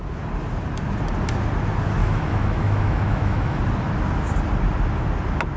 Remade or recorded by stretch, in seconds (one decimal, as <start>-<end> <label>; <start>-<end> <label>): 0.0-2.0 recorded; 2.0-3.6 remade; 3.6-5.6 recorded